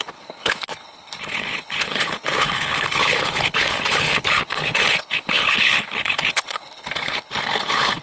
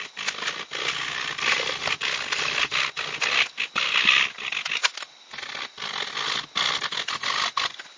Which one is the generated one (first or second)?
first